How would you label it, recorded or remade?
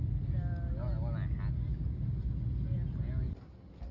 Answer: recorded